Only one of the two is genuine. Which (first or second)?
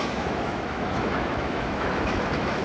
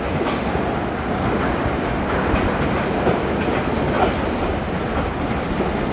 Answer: second